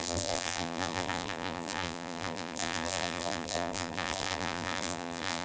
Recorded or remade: remade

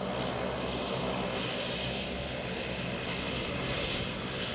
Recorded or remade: recorded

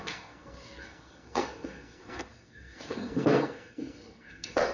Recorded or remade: remade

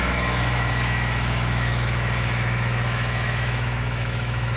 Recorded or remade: remade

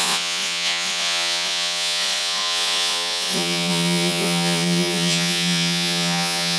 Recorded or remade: remade